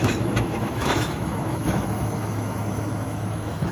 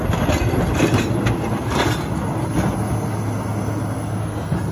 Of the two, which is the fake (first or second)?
first